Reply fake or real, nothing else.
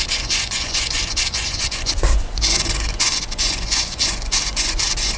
fake